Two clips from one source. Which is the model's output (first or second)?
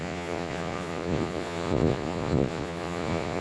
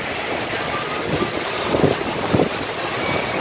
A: first